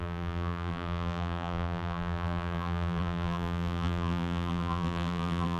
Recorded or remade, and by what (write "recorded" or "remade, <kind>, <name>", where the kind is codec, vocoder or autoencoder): remade, vocoder, BigVGAN v2